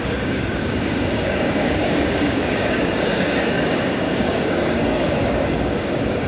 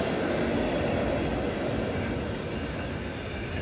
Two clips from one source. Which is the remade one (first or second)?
first